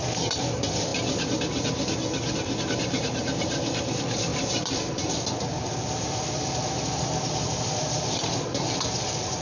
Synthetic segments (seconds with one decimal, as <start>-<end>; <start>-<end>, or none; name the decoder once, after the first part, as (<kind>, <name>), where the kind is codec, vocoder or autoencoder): 0.0-0.9 (vocoder, BigVGAN v2); 2.7-4.3; 6.0-9.4

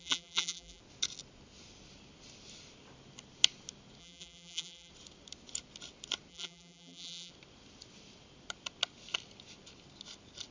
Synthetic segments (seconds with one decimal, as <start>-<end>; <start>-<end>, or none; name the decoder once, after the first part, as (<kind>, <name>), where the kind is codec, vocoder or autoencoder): 0.0-0.8 (vocoder, BigVGAN v2); 4.0-4.9; 6.3-7.3

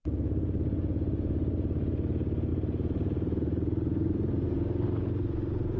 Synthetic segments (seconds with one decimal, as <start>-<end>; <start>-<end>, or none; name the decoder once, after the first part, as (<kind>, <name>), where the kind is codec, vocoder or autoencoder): 2.5-5.8 (vocoder, BigVGAN v2)

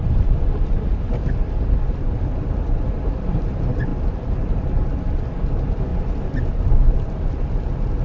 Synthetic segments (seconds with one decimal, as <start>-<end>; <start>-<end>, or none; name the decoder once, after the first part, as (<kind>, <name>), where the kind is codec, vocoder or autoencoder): 0.0-5.9 (vocoder, BigVGAN v2); 6.5-8.0